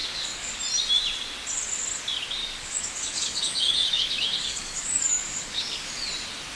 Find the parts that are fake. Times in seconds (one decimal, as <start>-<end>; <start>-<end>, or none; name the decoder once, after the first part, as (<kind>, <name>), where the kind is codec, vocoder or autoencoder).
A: 0.0-0.6 (codec, DAC); 2.4-5.9